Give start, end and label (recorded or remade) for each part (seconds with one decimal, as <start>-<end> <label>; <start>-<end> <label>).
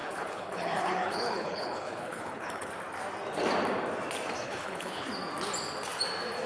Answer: 0.0-2.7 remade; 2.7-4.4 recorded; 4.4-5.1 remade; 5.1-6.5 recorded